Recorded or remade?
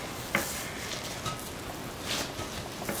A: recorded